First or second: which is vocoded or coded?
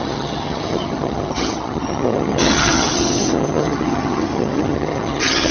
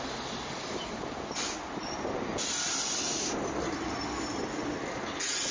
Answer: first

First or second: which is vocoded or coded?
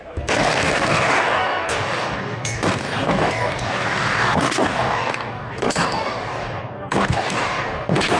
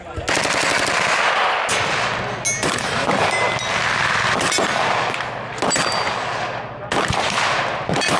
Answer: first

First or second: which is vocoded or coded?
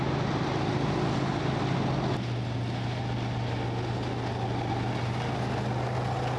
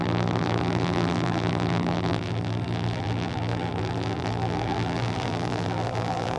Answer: second